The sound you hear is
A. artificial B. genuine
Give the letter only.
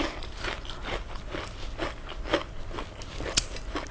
B